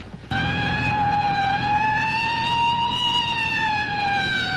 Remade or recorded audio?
remade